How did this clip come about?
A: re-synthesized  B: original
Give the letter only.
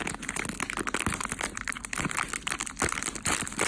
B